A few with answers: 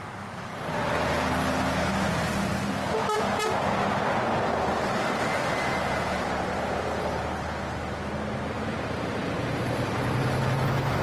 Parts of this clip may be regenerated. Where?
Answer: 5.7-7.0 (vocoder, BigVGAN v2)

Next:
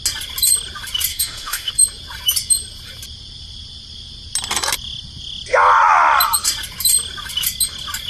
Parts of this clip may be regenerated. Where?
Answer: 1.1-1.7 (autoencoder, DAC-VAE)